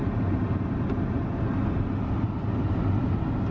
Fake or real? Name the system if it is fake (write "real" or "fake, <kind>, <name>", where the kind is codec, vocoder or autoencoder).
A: real